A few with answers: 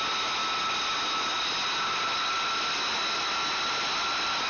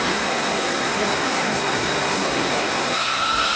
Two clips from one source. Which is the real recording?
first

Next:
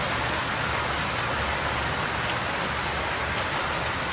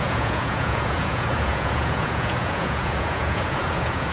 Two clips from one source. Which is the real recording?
first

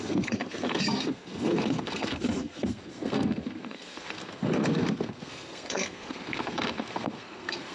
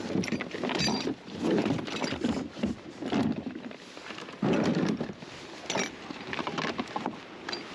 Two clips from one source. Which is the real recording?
second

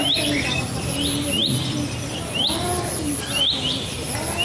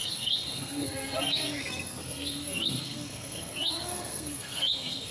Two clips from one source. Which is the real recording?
first